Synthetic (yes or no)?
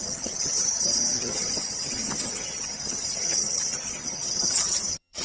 yes